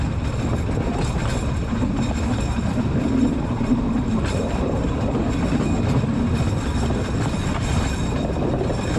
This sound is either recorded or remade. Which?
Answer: recorded